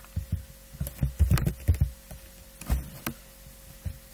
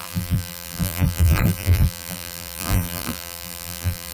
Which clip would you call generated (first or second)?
second